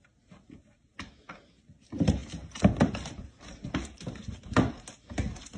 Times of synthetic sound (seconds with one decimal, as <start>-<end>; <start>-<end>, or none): none